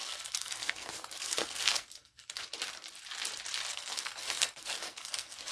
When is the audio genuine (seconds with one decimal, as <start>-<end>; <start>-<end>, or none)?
2.4-3.7